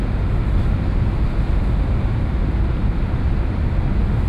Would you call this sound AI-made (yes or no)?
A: no